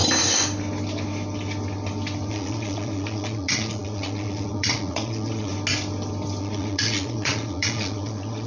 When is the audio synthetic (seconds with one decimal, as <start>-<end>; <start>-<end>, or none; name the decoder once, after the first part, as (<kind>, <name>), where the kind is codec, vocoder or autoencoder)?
2.3-5.5 (vocoder, Vocos); 6.4-8.5